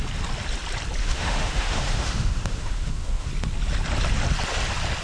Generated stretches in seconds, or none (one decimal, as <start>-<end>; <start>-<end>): 1.0-3.3